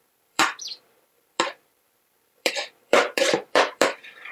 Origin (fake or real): fake